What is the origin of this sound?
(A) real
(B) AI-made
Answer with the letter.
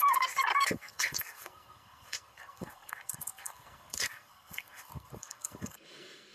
B